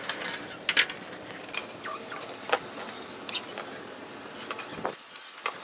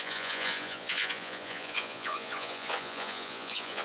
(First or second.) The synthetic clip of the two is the second